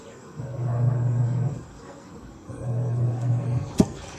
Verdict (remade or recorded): remade